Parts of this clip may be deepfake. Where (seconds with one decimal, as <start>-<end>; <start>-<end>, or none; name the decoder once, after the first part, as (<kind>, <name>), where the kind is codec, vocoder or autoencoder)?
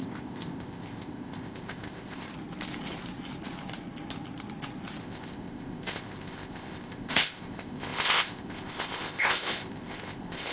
0.0-2.3 (codec, ZipCodec); 5.0-10.5